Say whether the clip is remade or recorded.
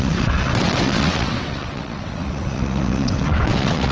remade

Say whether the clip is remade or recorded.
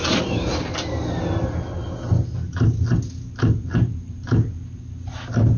recorded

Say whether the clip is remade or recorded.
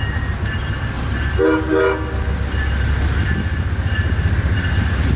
recorded